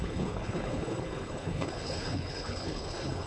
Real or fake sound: fake